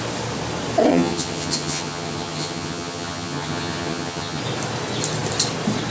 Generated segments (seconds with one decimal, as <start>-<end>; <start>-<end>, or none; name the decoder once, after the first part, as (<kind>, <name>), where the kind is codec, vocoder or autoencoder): 0.9-4.4 (vocoder, HiFi-GAN)